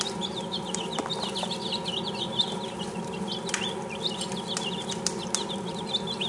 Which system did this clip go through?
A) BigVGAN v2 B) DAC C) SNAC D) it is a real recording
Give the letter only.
D